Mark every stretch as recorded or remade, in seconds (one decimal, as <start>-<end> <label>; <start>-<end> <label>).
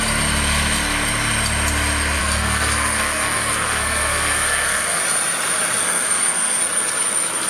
0.0-2.2 recorded; 2.2-5.0 remade; 5.0-5.8 recorded; 5.8-6.6 remade; 6.6-7.5 recorded